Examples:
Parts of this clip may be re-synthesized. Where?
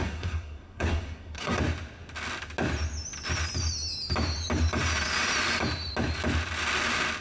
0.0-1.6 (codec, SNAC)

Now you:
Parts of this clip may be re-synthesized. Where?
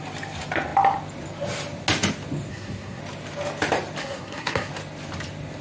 2.5-3.0 (codec, SNAC); 4.0-4.7